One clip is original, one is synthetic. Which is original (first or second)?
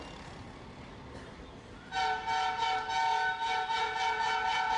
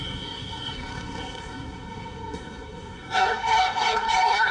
first